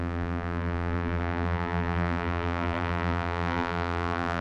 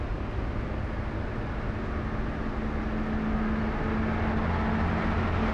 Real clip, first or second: second